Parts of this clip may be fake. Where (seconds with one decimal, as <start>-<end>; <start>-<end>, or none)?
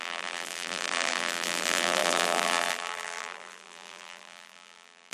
0.0-5.1